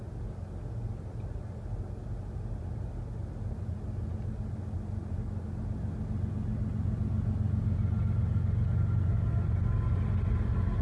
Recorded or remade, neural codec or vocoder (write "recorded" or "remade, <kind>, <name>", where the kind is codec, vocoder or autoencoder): recorded